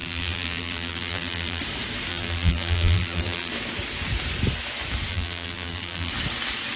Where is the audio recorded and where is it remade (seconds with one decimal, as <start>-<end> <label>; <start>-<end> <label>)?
0.0-1.6 remade; 1.6-2.1 recorded; 2.1-3.5 remade; 3.5-5.1 recorded; 5.1-6.1 remade; 6.1-6.8 recorded